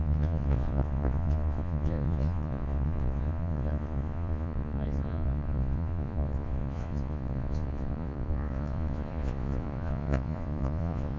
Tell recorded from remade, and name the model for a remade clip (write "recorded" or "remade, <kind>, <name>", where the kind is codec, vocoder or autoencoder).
remade, vocoder, Vocos